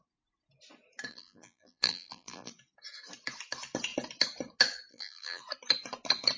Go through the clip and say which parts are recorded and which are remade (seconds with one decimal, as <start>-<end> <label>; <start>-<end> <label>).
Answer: 0.0-1.1 recorded; 1.1-2.5 remade; 2.5-4.9 recorded; 4.9-5.4 remade; 5.4-6.4 recorded